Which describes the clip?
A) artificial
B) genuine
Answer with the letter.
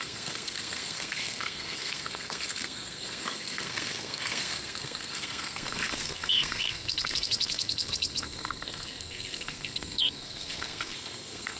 A